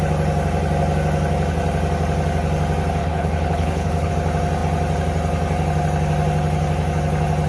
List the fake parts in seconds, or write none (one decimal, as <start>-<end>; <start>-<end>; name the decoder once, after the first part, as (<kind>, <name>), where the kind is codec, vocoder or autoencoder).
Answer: 3.0-4.1 (codec, HILCodec)